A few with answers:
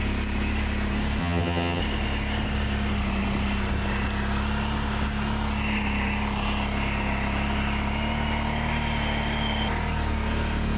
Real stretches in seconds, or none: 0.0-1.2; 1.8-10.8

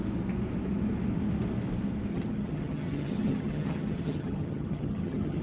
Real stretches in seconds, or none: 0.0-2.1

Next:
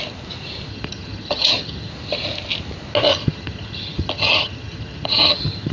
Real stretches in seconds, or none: 0.0-0.7; 1.9-3.1